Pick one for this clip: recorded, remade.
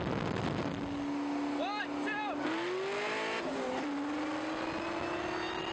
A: recorded